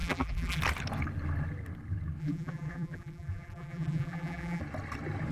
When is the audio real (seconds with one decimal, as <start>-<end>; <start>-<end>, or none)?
0.6-2.2; 4.6-5.3